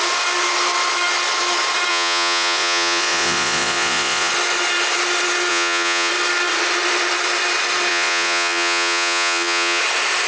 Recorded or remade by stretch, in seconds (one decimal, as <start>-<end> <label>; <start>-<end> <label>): 0.0-1.9 recorded; 1.9-4.3 remade; 4.3-5.5 recorded; 5.5-6.1 remade; 6.1-7.9 recorded; 7.9-9.8 remade; 9.8-10.3 recorded